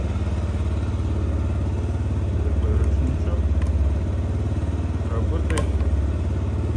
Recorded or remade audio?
recorded